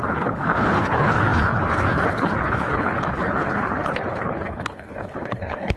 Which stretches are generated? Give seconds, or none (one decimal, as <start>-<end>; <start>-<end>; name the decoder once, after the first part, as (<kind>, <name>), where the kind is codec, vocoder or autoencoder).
0.0-5.8 (codec, HILCodec)